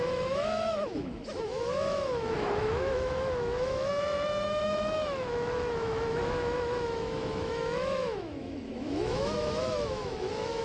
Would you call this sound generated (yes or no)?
yes